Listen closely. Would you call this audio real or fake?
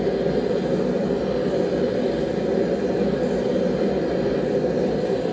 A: real